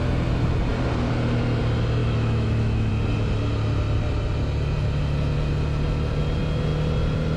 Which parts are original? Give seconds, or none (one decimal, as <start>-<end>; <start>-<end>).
0.0-2.0; 2.9-7.4